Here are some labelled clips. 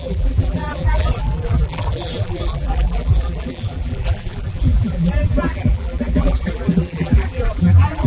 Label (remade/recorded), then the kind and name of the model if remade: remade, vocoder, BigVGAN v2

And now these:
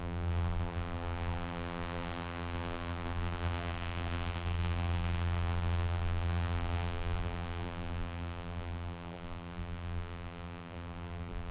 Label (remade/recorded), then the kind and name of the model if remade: remade, vocoder, BigVGAN v2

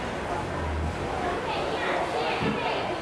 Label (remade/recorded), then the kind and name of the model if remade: recorded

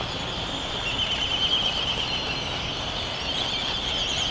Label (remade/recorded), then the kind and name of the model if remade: recorded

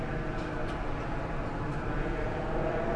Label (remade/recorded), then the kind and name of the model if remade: recorded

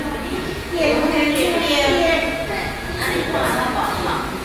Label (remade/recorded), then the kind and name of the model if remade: remade, vocoder, Vocos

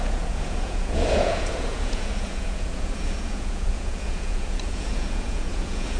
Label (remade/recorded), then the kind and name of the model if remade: remade, vocoder, Vocos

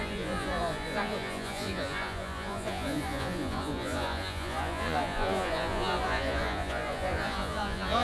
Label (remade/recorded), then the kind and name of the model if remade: remade, vocoder, Vocos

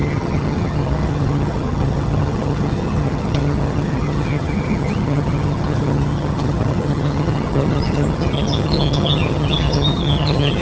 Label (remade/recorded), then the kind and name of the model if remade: remade, vocoder, HiFi-GAN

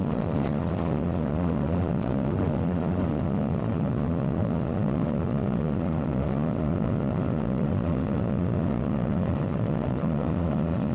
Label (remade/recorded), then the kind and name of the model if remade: remade, vocoder, Vocos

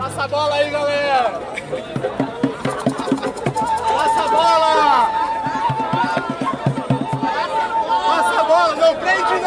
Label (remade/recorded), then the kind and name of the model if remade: recorded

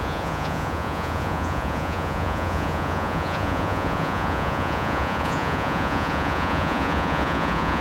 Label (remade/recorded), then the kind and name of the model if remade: remade, vocoder, Vocos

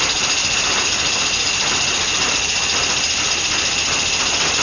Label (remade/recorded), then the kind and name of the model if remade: recorded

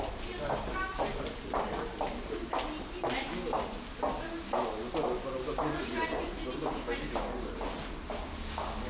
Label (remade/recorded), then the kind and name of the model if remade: recorded